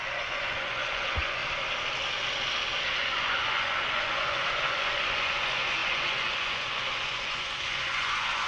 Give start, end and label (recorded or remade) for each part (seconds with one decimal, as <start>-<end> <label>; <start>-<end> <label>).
0.0-1.4 remade; 1.4-3.0 recorded; 3.0-8.5 remade